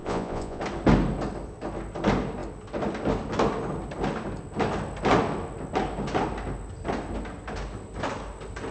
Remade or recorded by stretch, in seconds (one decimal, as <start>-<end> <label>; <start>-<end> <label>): 0.0-0.6 remade; 0.6-8.7 recorded